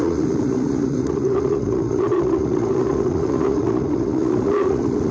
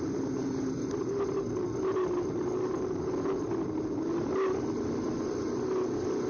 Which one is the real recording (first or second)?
second